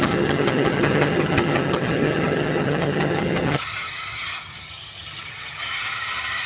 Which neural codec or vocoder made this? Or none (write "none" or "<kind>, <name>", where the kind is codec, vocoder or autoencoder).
vocoder, HiFi-GAN